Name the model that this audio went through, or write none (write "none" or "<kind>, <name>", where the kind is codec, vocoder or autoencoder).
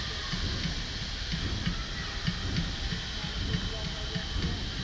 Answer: none